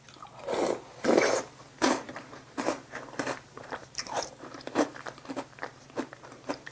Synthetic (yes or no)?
yes